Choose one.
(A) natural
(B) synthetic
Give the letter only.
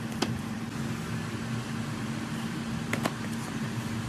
A